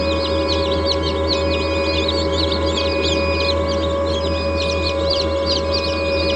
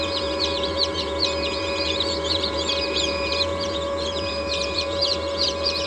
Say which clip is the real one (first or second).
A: first